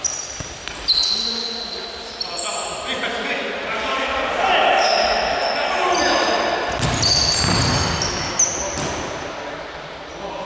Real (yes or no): yes